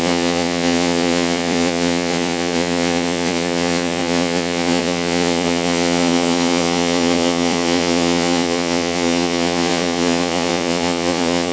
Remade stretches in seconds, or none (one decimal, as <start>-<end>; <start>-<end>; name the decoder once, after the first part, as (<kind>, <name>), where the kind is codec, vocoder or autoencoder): 0.0-11.5 (vocoder, Vocos)